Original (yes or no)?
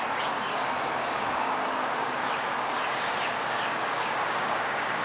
no